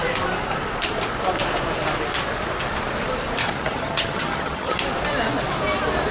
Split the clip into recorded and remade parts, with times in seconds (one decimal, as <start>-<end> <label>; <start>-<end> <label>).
0.0-3.4 recorded; 3.4-4.8 remade; 4.8-6.1 recorded